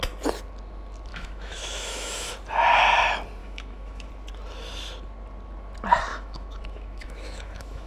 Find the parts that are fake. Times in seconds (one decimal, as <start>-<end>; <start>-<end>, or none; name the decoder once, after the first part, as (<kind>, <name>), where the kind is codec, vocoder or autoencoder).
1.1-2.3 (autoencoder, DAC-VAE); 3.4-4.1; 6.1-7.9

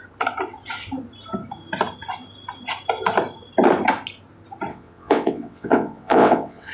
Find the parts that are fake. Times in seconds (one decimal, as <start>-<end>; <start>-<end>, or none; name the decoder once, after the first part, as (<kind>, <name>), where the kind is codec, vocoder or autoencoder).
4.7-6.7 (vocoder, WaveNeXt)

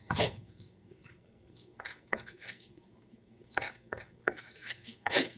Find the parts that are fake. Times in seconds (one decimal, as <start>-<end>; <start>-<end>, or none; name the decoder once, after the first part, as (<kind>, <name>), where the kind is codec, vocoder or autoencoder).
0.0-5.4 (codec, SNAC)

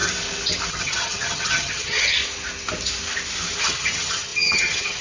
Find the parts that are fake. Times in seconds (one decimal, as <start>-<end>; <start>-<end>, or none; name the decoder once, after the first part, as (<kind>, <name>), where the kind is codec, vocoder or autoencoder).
0.7-2.2 (vocoder, HiFi-GAN); 3.6-5.0

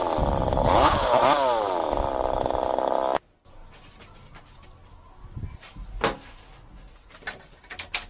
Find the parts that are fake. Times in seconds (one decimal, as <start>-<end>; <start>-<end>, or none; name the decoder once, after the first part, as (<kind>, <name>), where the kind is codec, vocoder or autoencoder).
0.6-1.2 (codec, HILCodec)